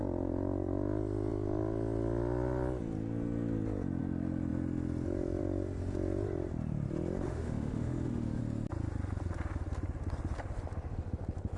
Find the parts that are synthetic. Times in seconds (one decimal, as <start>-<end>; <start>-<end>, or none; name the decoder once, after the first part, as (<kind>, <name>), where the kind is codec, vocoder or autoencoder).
7.3-8.4 (autoencoder, DAC-VAE)